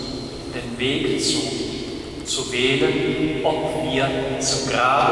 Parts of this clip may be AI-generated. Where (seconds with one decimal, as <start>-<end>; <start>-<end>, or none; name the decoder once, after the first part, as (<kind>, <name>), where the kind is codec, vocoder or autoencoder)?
1.1-1.9 (autoencoder, DAC-VAE); 3.1-4.6